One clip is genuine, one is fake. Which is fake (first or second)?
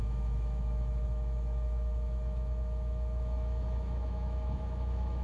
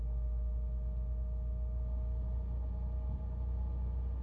first